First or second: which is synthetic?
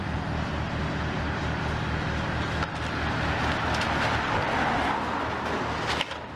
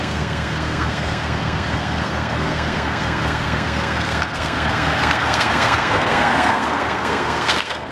second